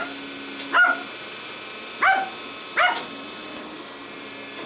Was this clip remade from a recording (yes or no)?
no